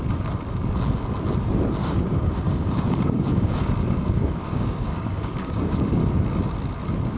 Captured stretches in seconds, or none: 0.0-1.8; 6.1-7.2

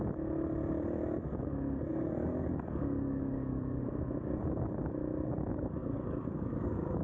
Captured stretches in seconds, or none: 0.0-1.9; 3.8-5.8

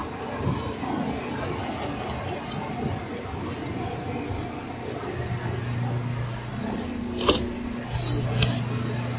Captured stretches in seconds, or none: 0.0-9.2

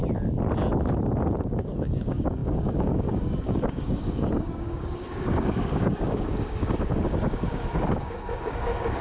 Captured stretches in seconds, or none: 0.0-1.4